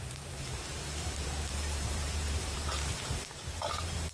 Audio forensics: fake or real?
fake